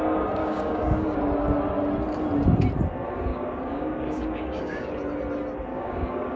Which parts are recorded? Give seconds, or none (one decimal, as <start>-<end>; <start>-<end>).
0.0-0.4; 1.2-3.3; 4.9-5.7